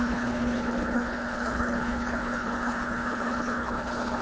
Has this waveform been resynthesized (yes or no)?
yes